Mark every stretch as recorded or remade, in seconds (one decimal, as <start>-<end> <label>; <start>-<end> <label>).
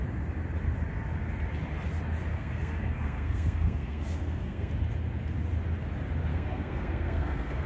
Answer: 0.0-2.3 recorded; 2.3-4.7 remade; 4.7-6.3 recorded; 6.3-7.7 remade